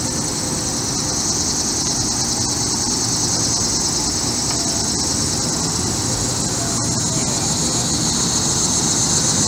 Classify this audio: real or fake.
real